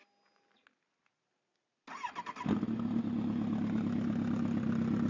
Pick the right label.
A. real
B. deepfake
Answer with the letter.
A